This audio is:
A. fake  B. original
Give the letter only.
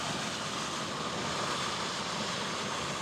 B